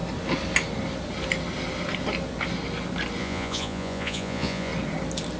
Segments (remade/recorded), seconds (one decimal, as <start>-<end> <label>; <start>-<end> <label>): 0.0-3.2 recorded; 3.2-4.7 remade; 4.7-5.4 recorded